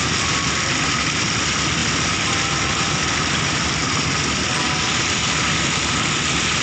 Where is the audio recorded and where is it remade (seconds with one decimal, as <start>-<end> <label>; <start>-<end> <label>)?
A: 0.0-6.6 recorded

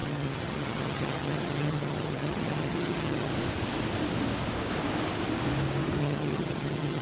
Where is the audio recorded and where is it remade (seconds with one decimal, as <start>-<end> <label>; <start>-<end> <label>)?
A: 0.0-3.3 remade; 3.3-6.0 recorded; 6.0-7.0 remade

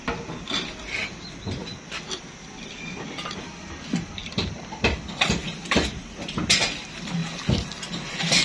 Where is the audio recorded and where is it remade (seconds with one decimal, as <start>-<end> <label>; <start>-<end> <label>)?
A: 0.0-8.4 recorded

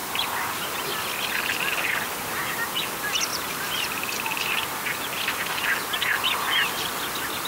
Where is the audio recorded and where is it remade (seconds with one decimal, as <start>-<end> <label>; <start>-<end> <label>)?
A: 0.0-0.8 remade; 0.8-3.3 recorded; 3.3-4.4 remade; 4.4-7.5 recorded

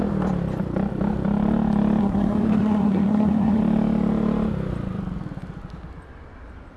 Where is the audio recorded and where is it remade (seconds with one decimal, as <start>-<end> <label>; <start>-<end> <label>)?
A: 0.0-2.0 recorded; 2.0-3.6 remade; 3.6-6.8 recorded